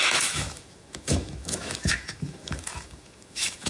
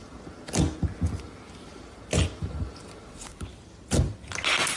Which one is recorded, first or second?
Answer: second